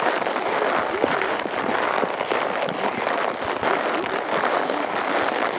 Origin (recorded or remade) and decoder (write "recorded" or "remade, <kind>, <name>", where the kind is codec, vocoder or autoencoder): remade, vocoder, BigVGAN v2